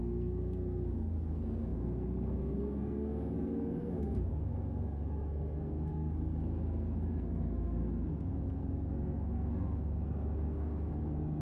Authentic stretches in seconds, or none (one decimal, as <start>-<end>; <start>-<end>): none